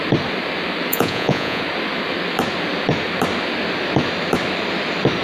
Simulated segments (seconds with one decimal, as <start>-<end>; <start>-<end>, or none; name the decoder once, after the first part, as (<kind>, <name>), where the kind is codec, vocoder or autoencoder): 0.9-1.6 (vocoder, Vocos)